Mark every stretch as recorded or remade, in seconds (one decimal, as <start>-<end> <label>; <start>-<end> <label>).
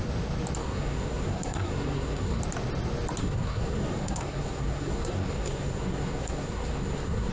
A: 0.0-0.6 recorded; 0.6-2.4 remade; 2.4-3.2 recorded; 3.2-7.3 remade